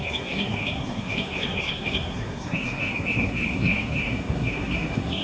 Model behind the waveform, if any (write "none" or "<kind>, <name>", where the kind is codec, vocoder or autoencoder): codec, SNAC